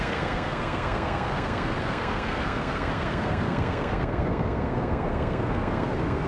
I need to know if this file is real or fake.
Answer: fake